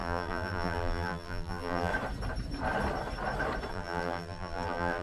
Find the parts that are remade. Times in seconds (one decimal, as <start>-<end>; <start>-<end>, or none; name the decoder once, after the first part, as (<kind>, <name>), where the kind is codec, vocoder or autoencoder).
0.0-1.9 (vocoder, BigVGAN v2); 3.7-5.0